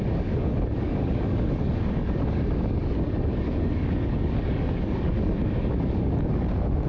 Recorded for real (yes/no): no